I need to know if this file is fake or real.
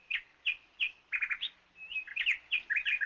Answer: real